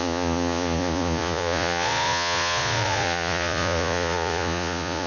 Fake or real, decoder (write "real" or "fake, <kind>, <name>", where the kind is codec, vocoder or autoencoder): fake, vocoder, Vocos